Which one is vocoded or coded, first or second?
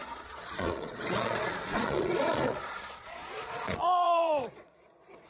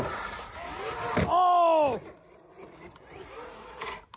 first